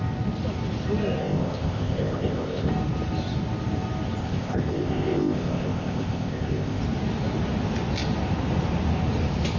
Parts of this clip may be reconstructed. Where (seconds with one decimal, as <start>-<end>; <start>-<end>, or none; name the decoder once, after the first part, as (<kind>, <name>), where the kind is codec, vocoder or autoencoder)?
1.2-2.7 (codec, ZipCodec); 4.2-6.8